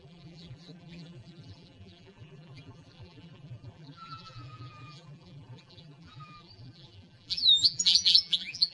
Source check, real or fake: fake